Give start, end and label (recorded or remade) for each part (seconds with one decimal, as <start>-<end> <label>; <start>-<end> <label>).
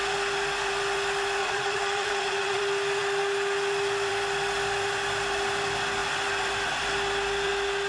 0.0-1.4 recorded; 1.4-2.6 remade; 2.6-7.9 recorded